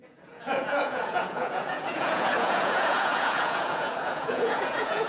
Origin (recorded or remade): remade